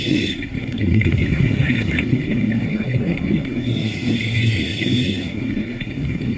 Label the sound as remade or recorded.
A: remade